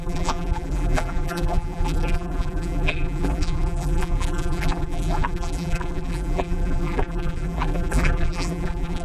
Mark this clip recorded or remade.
remade